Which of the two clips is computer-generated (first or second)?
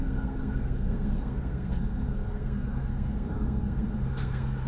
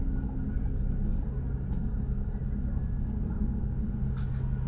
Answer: first